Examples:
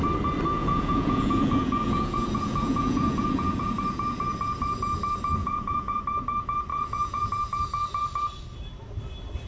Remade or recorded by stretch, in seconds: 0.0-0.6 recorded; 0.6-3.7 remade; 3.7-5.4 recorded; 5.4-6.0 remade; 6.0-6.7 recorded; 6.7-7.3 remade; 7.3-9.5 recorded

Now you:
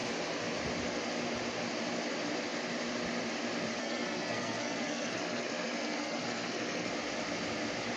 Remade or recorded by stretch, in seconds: 0.0-3.8 recorded; 3.8-6.9 remade; 6.9-8.0 recorded